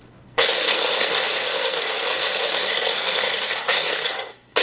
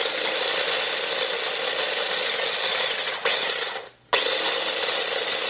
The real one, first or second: second